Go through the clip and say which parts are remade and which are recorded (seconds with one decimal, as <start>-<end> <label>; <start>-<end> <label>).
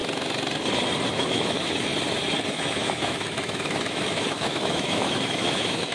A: 0.0-1.1 recorded; 1.1-1.9 remade; 1.9-2.5 recorded; 2.5-5.9 remade